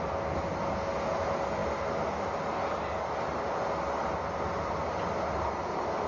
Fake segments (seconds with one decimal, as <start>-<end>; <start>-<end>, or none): none